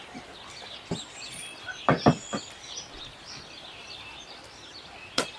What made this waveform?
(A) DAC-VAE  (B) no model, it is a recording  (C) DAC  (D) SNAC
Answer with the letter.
B